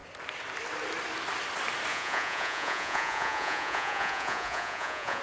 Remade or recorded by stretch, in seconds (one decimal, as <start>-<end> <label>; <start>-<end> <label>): 0.0-1.9 recorded; 1.9-5.2 remade